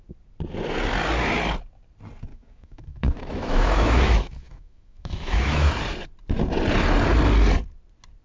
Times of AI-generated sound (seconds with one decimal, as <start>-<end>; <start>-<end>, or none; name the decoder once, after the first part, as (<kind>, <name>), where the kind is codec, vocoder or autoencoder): 2.3-5.7 (autoencoder, DAC-VAE)

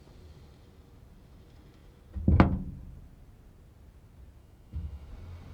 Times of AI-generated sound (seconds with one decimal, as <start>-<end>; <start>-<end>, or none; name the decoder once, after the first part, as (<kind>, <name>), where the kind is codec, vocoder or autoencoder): 4.4-5.1 (autoencoder, DAC-VAE)